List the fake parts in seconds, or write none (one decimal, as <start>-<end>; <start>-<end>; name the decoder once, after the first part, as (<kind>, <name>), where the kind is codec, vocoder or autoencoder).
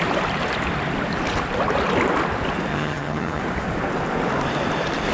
2.7-3.4 (vocoder, HiFi-GAN)